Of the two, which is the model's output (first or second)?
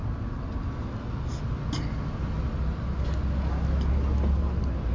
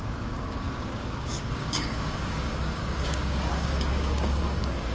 second